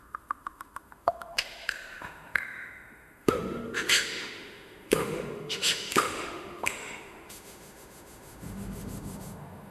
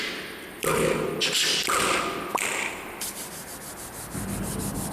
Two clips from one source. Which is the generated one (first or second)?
first